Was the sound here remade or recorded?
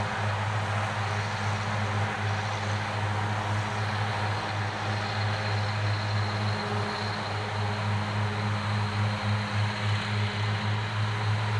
recorded